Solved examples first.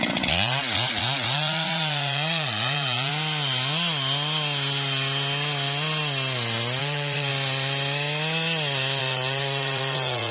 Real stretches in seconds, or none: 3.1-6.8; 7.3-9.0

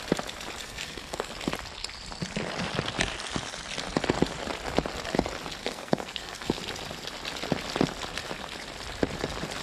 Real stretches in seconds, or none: 0.0-0.6; 1.3-5.6; 6.6-9.6

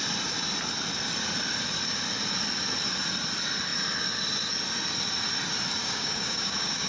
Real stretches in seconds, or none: 0.0-5.8